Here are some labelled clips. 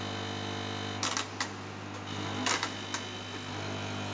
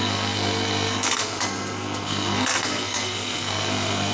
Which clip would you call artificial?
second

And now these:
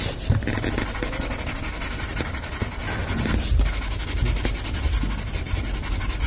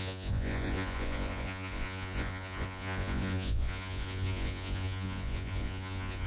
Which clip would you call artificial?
second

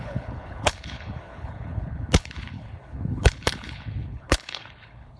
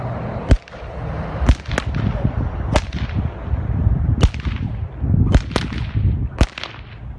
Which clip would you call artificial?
first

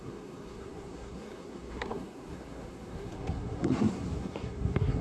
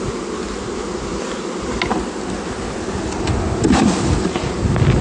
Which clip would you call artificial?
first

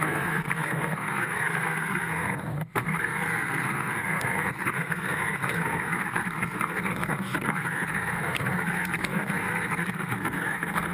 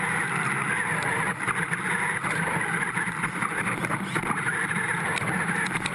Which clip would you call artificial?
first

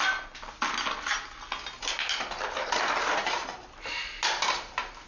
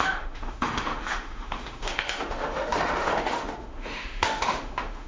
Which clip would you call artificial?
second